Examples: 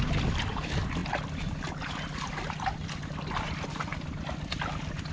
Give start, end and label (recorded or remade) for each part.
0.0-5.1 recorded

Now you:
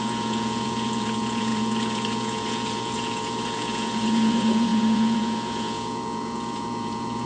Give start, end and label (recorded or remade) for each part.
0.0-7.3 remade

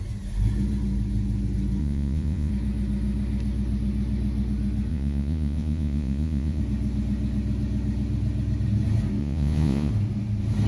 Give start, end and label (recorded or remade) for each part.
0.0-1.8 recorded; 1.8-2.5 remade; 2.5-4.9 recorded; 4.9-6.6 remade; 6.6-9.2 recorded; 9.2-9.9 remade; 9.9-10.7 recorded

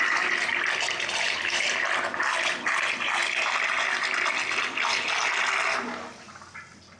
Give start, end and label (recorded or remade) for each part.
0.0-7.0 recorded

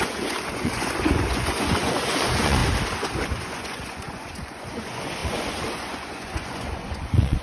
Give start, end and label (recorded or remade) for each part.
0.0-2.6 remade; 2.6-3.4 recorded; 3.4-7.4 remade

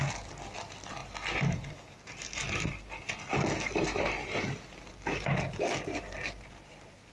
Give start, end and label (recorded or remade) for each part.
0.0-7.1 recorded

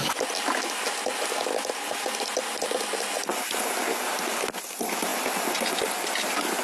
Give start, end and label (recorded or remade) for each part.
0.0-6.6 recorded

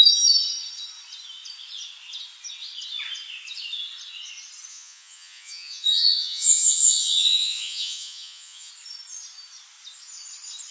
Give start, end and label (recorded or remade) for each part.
0.0-4.7 recorded; 4.7-8.7 remade; 8.7-10.7 recorded